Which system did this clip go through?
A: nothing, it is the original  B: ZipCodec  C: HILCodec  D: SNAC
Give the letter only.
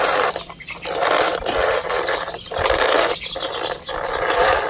A